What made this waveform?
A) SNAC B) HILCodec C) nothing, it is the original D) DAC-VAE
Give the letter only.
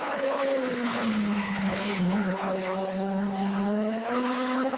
B